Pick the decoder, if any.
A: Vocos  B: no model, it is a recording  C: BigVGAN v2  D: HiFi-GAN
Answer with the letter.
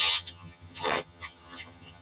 D